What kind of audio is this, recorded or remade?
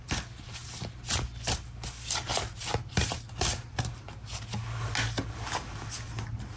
recorded